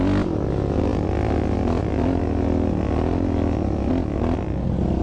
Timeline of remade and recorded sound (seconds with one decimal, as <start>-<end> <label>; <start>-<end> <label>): 0.0-5.0 recorded